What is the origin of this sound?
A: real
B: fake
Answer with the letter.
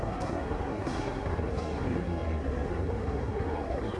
B